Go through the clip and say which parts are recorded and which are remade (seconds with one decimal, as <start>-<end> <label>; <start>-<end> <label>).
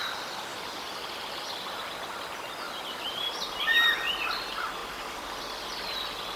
0.0-0.5 recorded; 0.5-4.3 remade; 4.3-4.8 recorded; 4.8-5.4 remade; 5.4-6.4 recorded